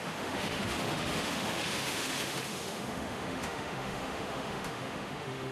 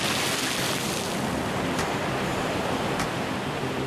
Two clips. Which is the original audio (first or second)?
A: second